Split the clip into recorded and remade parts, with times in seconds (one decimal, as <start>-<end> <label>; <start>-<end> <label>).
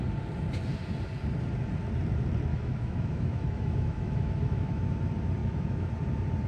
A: 0.0-2.5 recorded; 2.5-4.9 remade; 4.9-5.4 recorded; 5.4-5.9 remade; 5.9-6.5 recorded